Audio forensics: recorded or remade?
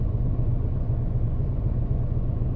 remade